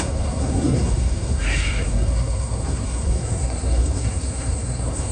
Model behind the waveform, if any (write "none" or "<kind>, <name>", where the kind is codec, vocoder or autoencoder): codec, SNAC